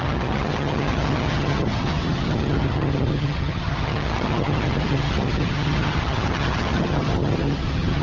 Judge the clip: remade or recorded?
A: remade